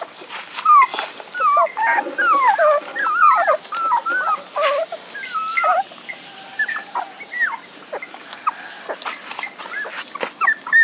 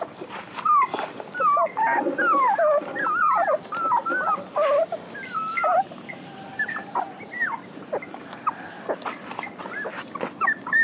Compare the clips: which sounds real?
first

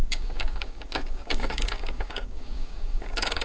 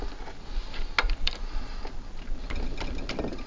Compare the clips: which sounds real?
second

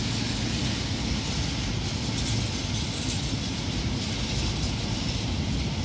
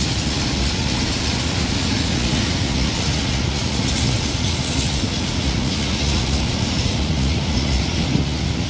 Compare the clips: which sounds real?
first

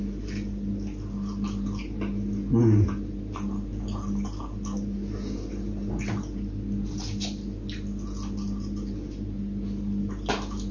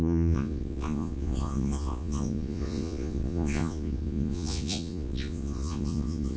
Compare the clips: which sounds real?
first